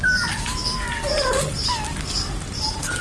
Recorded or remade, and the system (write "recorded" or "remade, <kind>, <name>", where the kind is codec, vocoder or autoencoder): recorded